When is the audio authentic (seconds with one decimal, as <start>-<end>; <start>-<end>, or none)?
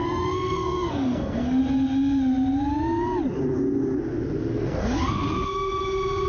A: 1.6-4.5; 5.2-6.3